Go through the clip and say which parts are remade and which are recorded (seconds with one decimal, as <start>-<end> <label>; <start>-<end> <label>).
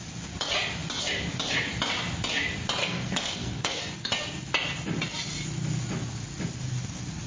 0.0-2.8 recorded; 2.8-3.8 remade; 3.8-7.3 recorded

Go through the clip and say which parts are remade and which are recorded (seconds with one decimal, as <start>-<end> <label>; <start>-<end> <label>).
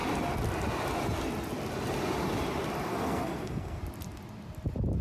0.0-2.9 recorded; 2.9-3.8 remade; 3.8-5.0 recorded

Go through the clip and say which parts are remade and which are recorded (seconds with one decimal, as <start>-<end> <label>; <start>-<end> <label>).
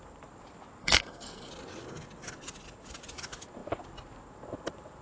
0.0-0.8 recorded; 0.8-1.5 remade; 1.5-5.0 recorded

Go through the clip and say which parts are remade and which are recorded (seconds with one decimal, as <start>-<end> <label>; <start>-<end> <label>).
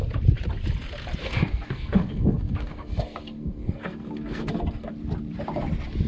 0.0-1.2 recorded; 1.2-4.9 remade; 4.9-6.1 recorded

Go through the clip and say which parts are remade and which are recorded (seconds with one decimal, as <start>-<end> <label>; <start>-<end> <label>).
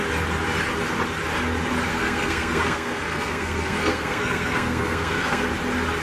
0.0-1.9 recorded; 1.9-5.5 remade; 5.5-6.0 recorded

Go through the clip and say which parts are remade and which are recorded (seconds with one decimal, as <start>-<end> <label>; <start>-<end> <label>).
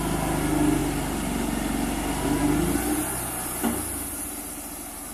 0.0-5.1 recorded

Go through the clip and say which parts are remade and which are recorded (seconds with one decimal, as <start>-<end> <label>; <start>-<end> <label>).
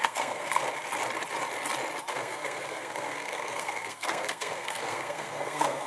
0.0-0.6 remade; 0.6-2.1 recorded; 2.1-5.9 remade